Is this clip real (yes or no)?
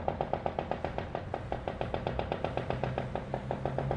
yes